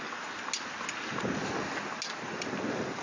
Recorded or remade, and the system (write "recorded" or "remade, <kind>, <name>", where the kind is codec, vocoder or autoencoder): recorded